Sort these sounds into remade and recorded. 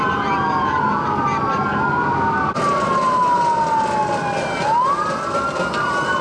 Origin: recorded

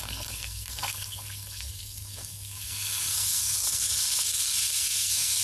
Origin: remade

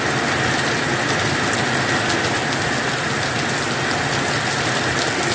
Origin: recorded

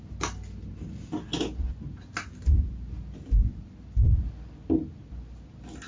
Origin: recorded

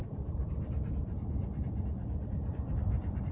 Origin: remade